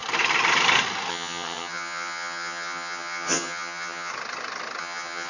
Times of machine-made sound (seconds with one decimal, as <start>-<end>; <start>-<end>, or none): 1.1-4.1; 4.8-5.3